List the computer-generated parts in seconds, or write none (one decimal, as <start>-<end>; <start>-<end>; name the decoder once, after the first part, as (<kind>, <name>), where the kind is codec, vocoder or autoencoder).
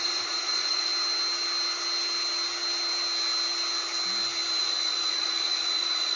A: 0.0-0.9 (vocoder, Vocos); 4.6-6.2